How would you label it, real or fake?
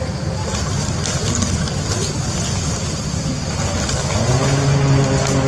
real